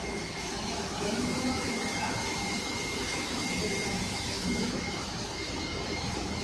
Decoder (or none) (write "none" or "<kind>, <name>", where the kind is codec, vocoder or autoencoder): autoencoder, DAC-VAE